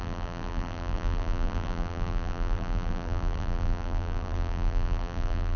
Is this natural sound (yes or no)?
no